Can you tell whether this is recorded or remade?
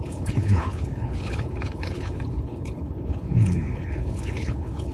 remade